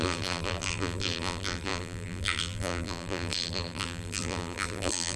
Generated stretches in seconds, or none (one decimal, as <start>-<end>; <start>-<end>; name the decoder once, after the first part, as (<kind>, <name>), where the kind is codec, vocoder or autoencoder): 0.0-5.2 (vocoder, BigVGAN v2)